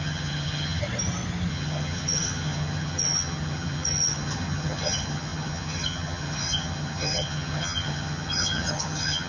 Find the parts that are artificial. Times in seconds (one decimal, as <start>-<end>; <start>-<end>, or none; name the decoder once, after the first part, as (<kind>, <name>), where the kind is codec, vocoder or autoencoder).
0.0-0.8 (vocoder, HiFi-GAN); 1.5-9.3